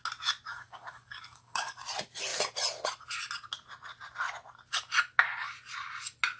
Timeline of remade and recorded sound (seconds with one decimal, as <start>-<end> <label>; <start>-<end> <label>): 0.0-0.5 recorded; 0.5-1.8 remade; 1.8-6.4 recorded